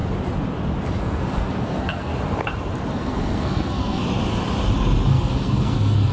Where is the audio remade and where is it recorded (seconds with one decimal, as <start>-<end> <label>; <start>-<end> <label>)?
0.0-1.0 recorded; 1.0-2.1 remade; 2.1-2.9 recorded; 2.9-4.0 remade; 4.0-5.1 recorded; 5.1-6.1 remade